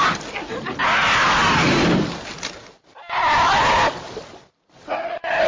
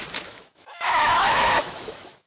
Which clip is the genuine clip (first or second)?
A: first